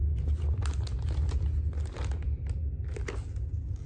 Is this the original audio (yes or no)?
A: yes